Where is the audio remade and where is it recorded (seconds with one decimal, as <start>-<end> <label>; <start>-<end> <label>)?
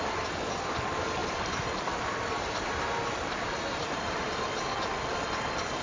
0.0-1.2 recorded; 1.2-4.4 remade; 4.4-5.8 recorded